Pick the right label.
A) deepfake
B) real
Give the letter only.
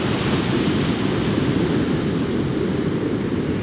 B